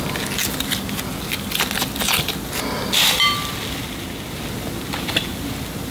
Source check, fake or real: real